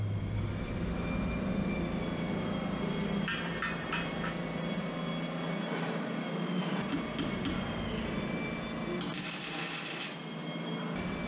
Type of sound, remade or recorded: recorded